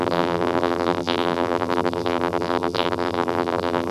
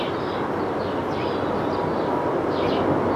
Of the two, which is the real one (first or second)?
second